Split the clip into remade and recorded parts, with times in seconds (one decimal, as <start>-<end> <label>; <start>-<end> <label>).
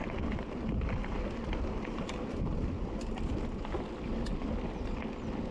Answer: 0.0-3.3 remade; 3.3-5.5 recorded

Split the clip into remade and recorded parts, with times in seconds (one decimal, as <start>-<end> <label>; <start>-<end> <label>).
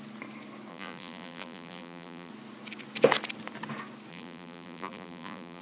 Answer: 0.0-0.7 recorded; 0.7-2.3 remade; 2.3-4.1 recorded; 4.1-5.6 remade